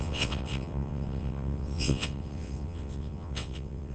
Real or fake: fake